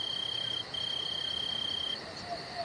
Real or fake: fake